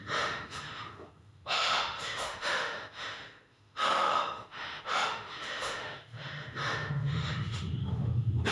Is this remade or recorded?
remade